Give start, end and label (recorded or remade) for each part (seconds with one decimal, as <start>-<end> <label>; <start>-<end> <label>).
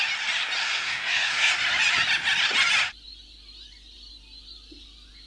0.0-0.6 recorded; 0.6-1.5 remade; 1.5-5.3 recorded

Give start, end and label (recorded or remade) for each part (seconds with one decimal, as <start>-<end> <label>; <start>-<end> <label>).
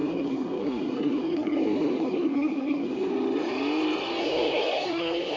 0.0-3.1 remade; 3.1-4.2 recorded; 4.2-5.4 remade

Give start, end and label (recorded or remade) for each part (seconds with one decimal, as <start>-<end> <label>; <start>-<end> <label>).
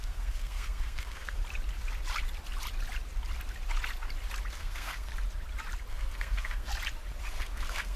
0.0-1.4 remade; 1.4-4.5 recorded; 4.5-5.1 remade; 5.1-5.9 recorded; 5.9-6.7 remade; 6.7-7.2 recorded; 7.2-8.0 remade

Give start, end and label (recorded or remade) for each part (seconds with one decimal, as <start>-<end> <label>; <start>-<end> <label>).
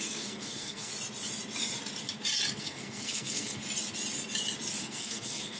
0.0-0.9 remade; 0.9-2.6 recorded; 2.6-3.6 remade; 3.6-4.8 recorded; 4.8-5.6 remade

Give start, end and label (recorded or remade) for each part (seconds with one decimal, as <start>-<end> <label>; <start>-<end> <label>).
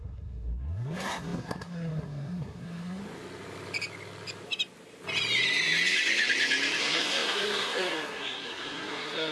0.0-3.0 remade; 3.0-6.8 recorded; 6.8-9.3 remade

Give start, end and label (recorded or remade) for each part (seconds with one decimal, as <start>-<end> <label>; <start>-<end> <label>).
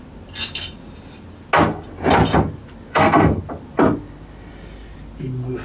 0.0-2.9 recorded; 2.9-3.4 remade; 3.4-5.6 recorded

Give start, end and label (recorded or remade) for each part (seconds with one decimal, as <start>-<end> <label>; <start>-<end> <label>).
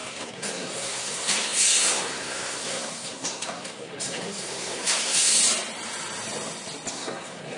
0.0-5.4 remade; 5.4-6.9 recorded; 6.9-7.6 remade